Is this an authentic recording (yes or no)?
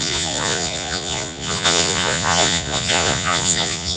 no